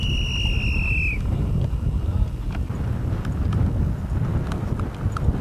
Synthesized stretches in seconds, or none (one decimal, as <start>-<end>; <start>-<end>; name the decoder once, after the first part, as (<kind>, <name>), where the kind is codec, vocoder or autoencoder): none